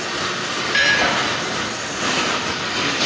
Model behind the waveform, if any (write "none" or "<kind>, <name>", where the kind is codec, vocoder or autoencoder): none